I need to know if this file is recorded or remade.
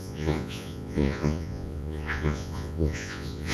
remade